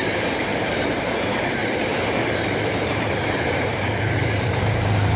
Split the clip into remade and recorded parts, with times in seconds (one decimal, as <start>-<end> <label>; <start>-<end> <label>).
0.0-5.2 remade